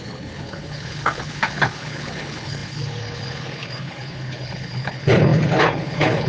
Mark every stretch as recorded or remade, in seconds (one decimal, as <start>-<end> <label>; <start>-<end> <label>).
0.0-6.3 remade